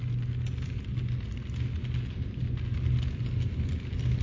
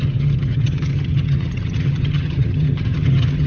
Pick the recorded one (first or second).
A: first